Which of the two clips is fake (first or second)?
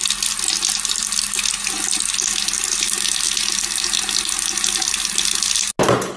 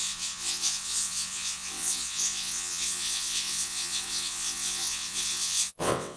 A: second